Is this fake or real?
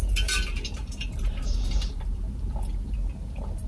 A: fake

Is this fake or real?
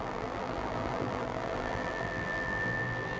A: fake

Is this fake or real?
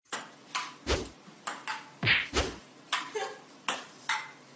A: real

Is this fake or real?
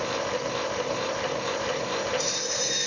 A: fake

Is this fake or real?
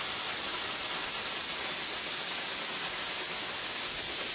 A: real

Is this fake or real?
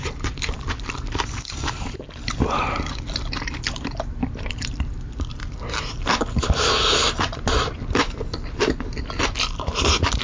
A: fake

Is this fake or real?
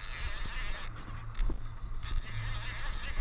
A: real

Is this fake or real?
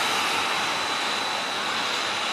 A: real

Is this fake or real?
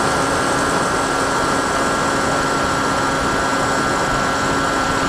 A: real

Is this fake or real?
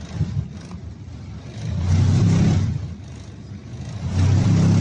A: real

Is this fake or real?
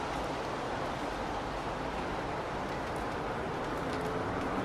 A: real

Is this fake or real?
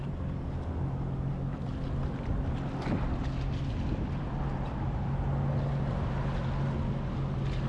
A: real